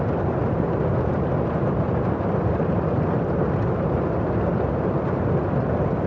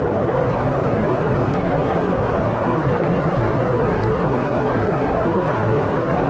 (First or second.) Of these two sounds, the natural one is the first